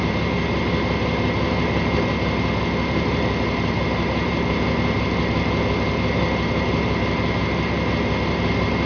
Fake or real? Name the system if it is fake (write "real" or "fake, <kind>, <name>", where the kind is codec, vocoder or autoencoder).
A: real